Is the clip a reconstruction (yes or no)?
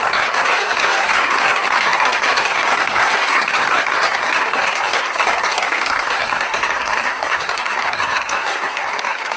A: yes